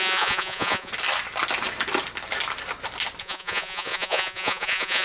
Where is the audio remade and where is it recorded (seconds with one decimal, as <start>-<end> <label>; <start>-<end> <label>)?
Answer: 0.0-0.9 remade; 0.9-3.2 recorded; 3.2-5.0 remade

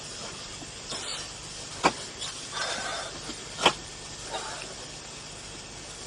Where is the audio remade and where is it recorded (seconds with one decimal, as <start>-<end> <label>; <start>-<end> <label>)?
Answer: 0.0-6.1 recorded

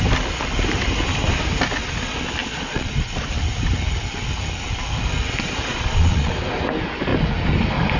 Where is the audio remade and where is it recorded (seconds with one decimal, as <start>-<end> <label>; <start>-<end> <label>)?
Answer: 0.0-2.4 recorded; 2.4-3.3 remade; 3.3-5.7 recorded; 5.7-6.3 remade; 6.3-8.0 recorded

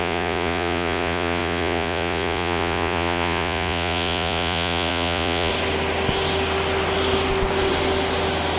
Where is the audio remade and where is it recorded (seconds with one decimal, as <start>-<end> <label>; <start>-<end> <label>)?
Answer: 0.0-5.5 remade; 5.5-8.6 recorded

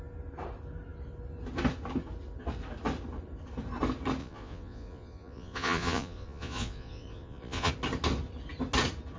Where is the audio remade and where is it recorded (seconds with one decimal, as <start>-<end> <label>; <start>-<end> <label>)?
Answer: 0.0-4.2 recorded; 4.2-7.7 remade; 7.7-9.2 recorded

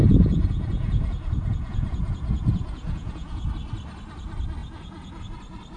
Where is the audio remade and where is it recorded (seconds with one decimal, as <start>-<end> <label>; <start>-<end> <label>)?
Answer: 0.0-3.5 remade; 3.5-4.6 recorded; 4.6-5.2 remade; 5.2-5.8 recorded